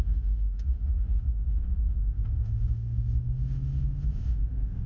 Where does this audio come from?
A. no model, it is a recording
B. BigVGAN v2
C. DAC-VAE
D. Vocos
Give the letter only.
C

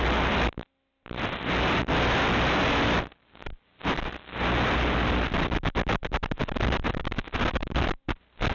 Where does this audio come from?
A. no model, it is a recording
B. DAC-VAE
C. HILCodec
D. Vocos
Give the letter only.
A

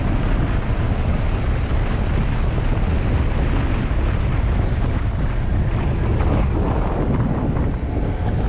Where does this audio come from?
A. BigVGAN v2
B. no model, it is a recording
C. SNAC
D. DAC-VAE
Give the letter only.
B